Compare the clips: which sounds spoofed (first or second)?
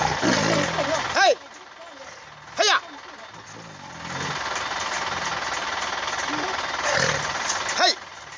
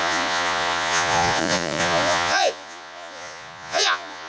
second